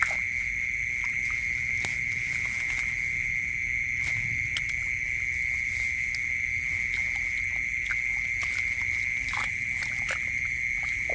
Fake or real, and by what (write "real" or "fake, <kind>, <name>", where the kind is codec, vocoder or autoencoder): real